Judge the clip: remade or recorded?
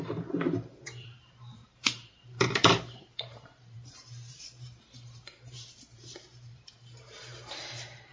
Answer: remade